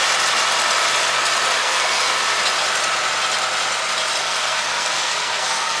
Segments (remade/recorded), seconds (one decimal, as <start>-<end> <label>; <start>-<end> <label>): 0.0-1.6 recorded; 1.6-2.2 remade; 2.2-4.2 recorded; 4.2-5.8 remade